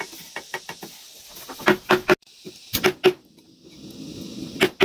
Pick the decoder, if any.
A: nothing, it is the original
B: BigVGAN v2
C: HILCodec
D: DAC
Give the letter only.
A